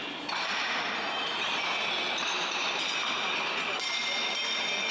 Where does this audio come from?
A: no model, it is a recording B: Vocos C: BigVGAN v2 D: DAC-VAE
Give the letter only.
A